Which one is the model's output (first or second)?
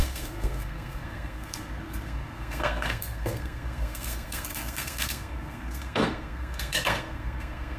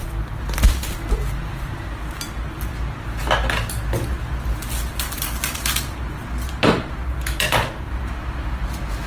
first